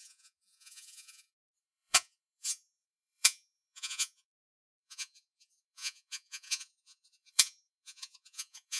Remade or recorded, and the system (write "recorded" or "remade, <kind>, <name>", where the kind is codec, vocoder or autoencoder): remade, vocoder, Vocos